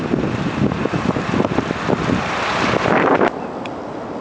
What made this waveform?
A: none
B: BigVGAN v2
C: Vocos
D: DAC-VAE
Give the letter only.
A